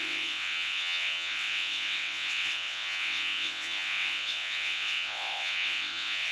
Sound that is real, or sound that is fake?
fake